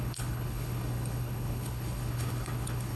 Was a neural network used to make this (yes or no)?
yes